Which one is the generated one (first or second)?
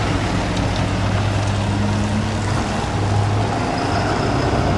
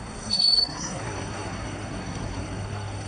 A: second